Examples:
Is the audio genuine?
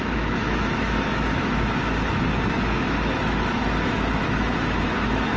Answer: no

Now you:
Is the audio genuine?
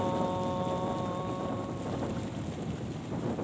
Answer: yes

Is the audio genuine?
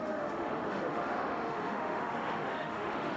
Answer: no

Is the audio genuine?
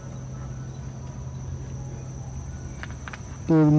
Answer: yes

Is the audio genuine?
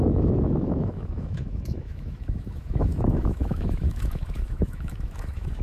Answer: no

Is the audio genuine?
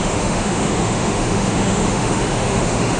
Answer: no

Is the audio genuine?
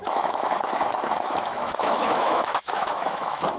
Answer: no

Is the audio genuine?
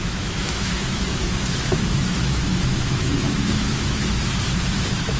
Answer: no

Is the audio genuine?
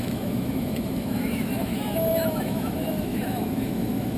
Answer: no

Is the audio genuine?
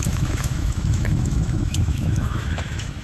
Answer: no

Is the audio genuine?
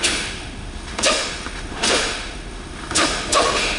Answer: no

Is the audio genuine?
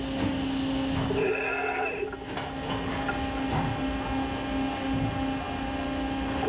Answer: yes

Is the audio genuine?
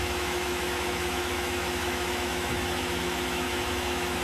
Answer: no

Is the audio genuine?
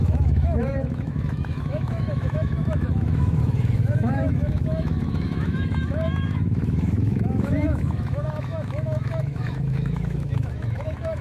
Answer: no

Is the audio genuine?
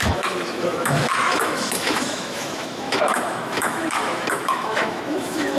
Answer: no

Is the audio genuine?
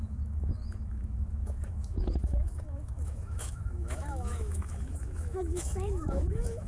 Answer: no